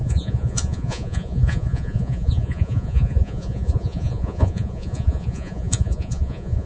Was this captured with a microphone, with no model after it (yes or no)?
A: no